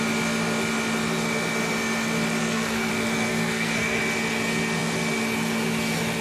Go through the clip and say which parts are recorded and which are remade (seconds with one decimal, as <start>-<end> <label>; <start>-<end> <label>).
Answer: 0.0-2.4 recorded; 2.4-2.9 remade; 2.9-3.3 recorded; 3.3-4.0 remade; 4.0-6.2 recorded